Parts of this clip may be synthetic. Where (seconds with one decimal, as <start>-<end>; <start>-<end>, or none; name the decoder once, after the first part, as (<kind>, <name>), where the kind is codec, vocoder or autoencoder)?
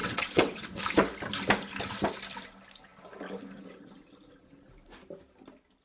0.0-0.8 (vocoder, WaveNeXt)